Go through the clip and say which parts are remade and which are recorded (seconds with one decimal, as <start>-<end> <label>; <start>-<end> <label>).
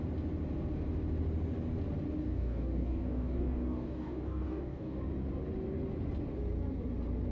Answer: 0.0-2.2 recorded; 2.2-5.0 remade; 5.0-7.3 recorded